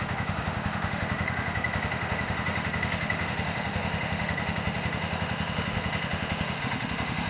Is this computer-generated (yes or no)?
yes